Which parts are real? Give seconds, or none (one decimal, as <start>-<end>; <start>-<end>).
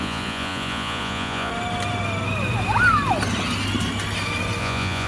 1.5-4.6